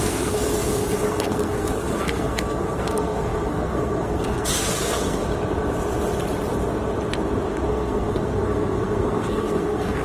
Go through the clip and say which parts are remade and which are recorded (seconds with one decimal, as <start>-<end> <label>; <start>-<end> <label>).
0.0-5.2 remade; 5.2-7.7 recorded; 7.7-10.0 remade